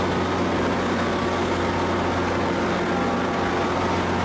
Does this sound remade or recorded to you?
recorded